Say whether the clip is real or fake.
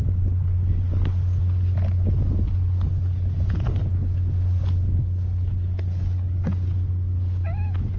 real